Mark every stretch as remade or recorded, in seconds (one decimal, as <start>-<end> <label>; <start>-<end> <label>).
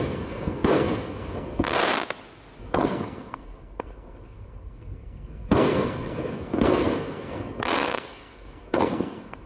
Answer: 0.0-1.8 remade; 1.8-2.6 recorded; 2.6-9.5 remade